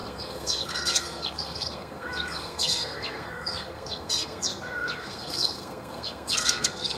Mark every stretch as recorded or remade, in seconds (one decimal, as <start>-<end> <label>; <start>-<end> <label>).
0.0-7.0 remade